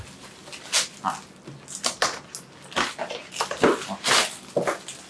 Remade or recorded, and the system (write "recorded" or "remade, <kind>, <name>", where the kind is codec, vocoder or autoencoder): recorded